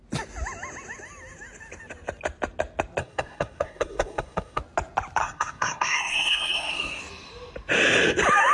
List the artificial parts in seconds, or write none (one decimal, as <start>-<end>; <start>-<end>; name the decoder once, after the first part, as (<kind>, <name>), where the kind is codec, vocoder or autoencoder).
3.0-4.6 (codec, SNAC); 5.2-7.0